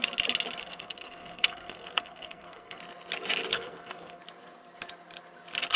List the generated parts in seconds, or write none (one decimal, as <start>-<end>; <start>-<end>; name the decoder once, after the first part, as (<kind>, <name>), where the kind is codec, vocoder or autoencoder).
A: 0.6-2.8 (codec, SNAC); 3.5-4.2